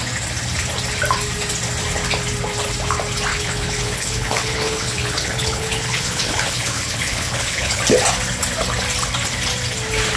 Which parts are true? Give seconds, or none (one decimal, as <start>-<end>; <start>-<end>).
0.0-3.3; 7.8-10.2